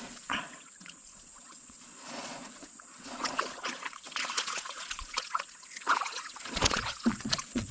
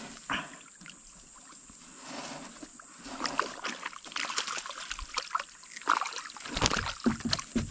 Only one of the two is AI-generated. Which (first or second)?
first